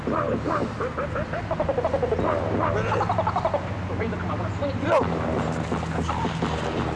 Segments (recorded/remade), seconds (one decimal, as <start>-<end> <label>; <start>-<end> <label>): 0.0-7.0 recorded